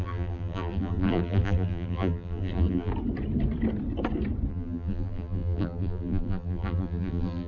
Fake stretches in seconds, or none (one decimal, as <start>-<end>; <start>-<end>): 0.0-2.9; 4.5-7.5